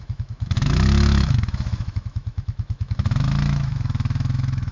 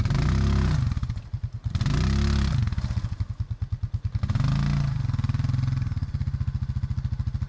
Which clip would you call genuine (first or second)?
second